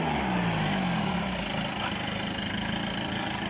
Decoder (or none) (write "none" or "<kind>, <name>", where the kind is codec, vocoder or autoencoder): none